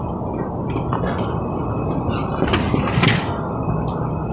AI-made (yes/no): no